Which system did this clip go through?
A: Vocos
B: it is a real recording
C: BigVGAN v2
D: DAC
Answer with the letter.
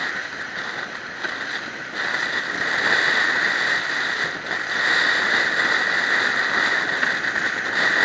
B